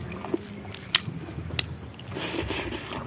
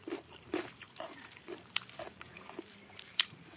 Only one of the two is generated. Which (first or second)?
second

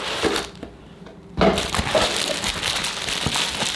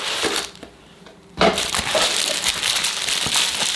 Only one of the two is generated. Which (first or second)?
second